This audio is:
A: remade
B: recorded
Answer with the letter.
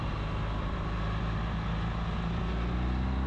B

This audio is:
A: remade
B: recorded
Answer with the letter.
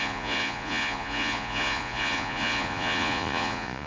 A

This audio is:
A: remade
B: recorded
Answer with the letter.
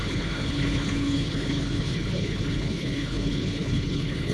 A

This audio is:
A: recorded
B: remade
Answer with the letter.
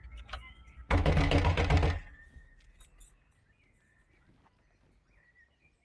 A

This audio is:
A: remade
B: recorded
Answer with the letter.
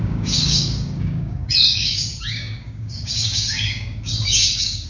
A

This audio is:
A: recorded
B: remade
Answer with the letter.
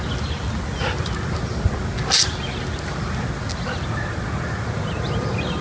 A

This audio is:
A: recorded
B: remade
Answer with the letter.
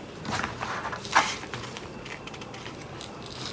B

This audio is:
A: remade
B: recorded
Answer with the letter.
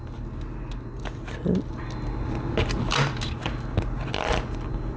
B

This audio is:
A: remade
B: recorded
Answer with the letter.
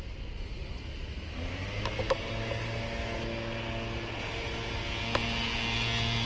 B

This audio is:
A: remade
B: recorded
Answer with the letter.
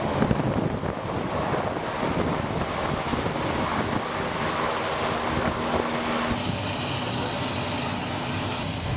B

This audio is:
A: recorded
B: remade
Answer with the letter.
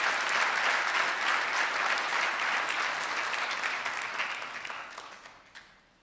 A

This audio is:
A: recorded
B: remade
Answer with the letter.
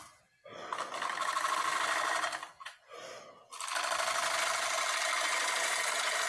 A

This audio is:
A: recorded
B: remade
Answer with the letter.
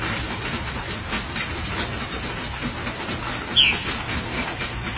A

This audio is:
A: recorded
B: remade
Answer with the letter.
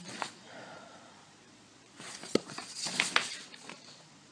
B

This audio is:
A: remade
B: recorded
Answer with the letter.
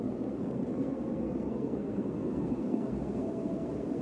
A